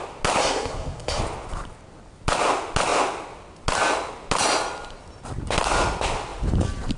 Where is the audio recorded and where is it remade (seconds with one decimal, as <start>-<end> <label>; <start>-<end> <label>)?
0.0-0.4 recorded; 0.4-1.2 remade; 1.2-7.0 recorded